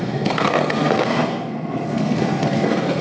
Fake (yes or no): yes